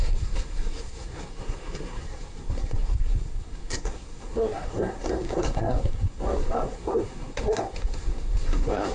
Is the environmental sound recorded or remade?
remade